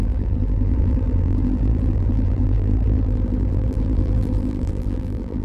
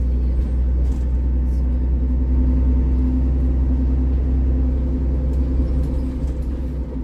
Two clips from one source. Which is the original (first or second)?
second